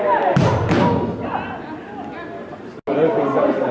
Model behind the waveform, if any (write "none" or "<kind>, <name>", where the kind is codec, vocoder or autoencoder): none